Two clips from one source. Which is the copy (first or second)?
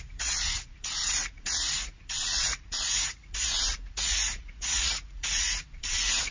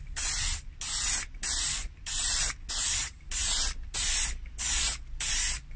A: first